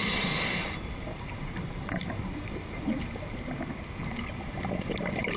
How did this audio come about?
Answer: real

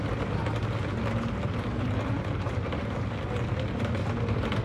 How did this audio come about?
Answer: real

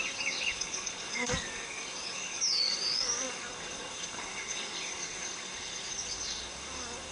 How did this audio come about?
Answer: fake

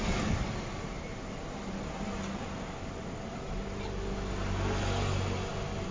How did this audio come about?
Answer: real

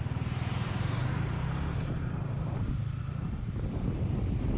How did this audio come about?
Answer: fake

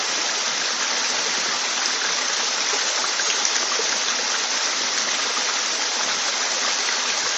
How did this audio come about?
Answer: real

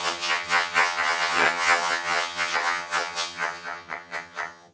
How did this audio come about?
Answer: fake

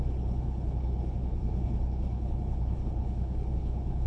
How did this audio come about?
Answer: fake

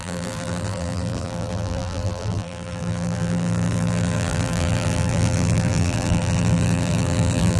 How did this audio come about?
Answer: fake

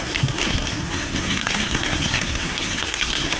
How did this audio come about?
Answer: fake